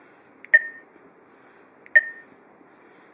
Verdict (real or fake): real